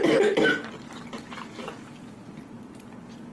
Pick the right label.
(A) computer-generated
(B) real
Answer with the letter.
B